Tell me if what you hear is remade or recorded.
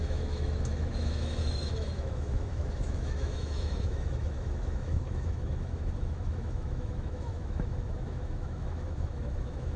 remade